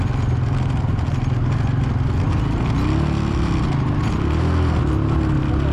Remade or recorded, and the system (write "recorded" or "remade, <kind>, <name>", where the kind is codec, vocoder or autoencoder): recorded